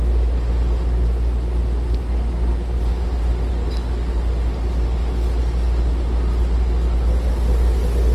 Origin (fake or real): real